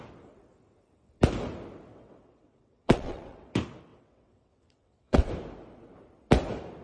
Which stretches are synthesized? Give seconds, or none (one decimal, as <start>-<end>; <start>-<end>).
1.9-3.5; 3.9-5.3